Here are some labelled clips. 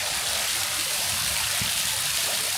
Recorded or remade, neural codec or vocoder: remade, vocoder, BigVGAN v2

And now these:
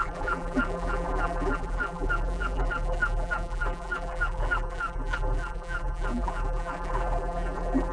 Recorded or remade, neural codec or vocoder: remade, vocoder, BigVGAN v2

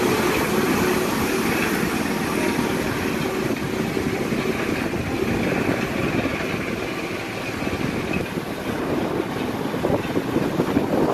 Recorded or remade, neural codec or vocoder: recorded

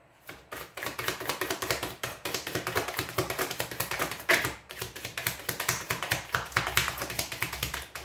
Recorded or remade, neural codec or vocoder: remade, vocoder, BigVGAN v2